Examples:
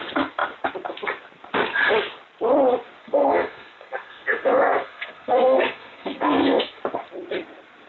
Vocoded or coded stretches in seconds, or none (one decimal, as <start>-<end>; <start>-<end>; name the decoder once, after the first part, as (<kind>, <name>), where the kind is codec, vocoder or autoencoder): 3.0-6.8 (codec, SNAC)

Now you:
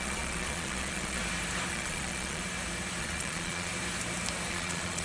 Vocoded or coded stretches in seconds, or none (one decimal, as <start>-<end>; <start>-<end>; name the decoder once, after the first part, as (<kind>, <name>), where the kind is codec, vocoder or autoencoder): 0.0-1.2 (vocoder, Vocos); 1.7-2.4; 3.0-3.7; 4.5-5.0

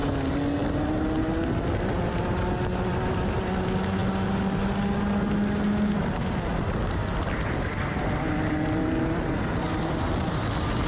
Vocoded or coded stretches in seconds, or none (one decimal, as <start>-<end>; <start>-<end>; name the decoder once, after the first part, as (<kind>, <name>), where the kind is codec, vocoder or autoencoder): none

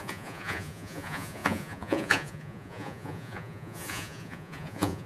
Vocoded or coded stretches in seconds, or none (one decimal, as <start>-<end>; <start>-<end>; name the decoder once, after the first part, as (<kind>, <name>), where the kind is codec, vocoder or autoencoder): 0.0-5.1 (vocoder, Vocos)